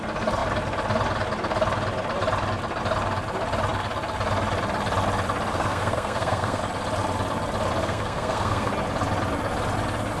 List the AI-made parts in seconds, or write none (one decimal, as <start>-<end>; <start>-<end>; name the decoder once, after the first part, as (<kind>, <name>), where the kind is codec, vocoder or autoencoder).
5.5-6.6 (codec, SNAC); 7.8-8.7